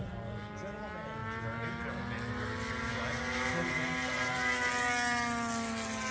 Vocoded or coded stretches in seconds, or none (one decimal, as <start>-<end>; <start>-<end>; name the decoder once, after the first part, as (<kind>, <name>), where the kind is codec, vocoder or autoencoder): none